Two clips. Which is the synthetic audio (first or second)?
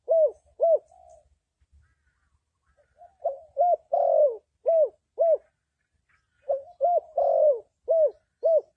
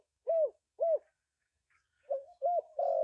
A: second